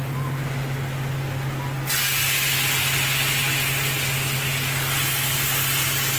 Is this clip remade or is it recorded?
recorded